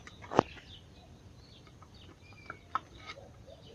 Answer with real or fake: real